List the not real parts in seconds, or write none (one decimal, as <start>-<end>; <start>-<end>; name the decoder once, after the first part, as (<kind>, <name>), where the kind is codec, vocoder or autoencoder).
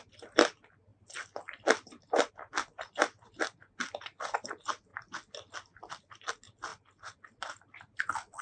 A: 0.9-2.3 (vocoder, BigVGAN v2); 6.7-7.7